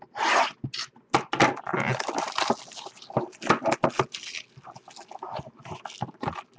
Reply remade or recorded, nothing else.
recorded